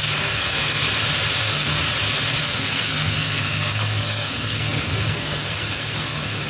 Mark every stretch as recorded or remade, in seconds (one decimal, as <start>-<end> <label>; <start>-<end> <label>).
0.0-0.8 remade; 0.8-1.4 recorded; 1.4-1.8 remade; 1.8-2.4 recorded; 2.4-6.5 remade